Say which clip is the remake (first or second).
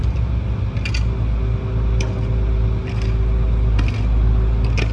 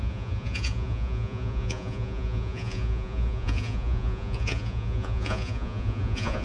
second